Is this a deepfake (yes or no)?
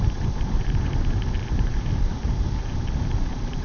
yes